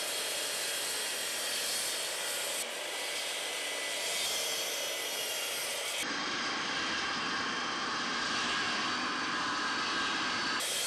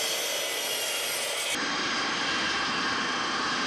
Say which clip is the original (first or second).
second